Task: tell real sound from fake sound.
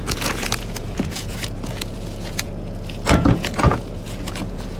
fake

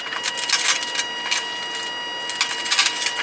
real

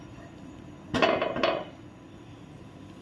real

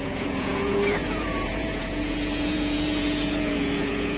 fake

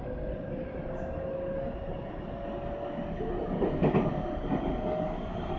real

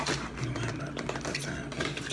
real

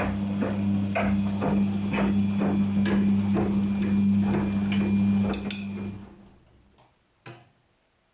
real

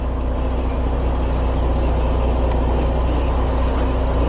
real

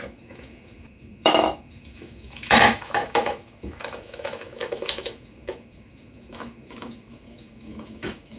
fake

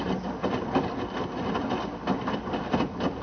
real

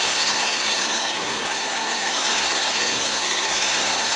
fake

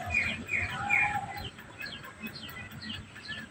real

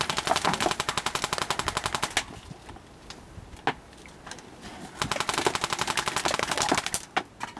real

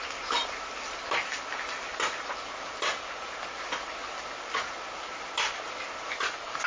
real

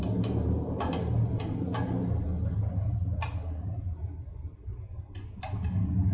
real